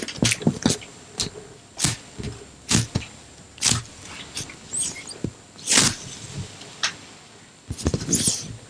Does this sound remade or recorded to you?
recorded